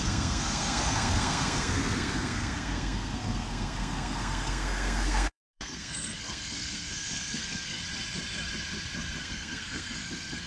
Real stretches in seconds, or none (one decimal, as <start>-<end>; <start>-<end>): 7.8-9.2